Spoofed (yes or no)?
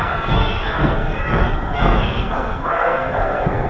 yes